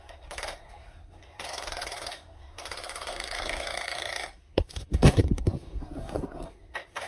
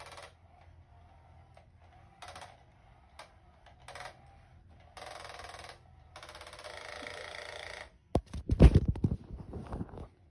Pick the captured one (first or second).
second